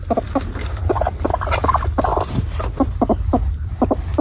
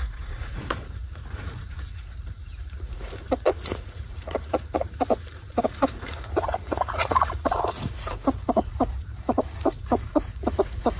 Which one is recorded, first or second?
first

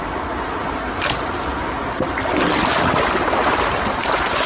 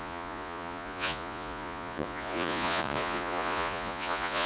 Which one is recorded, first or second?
first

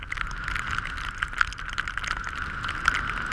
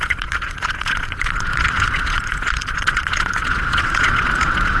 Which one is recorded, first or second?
first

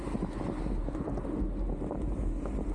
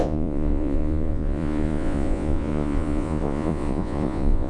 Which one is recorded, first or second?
first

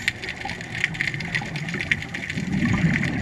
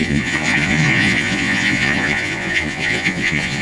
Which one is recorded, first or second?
first